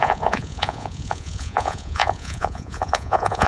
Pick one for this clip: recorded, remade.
remade